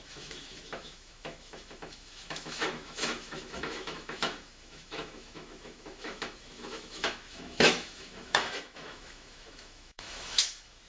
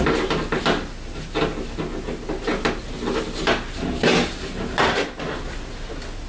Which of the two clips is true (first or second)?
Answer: second